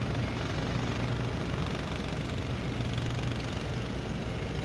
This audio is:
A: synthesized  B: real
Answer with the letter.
B